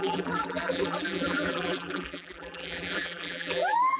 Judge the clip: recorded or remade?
remade